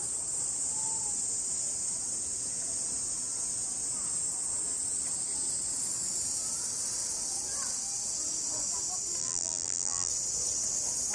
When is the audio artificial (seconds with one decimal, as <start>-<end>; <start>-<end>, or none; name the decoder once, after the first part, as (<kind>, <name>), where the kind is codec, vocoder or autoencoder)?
9.2-10.1 (vocoder, BigVGAN v2)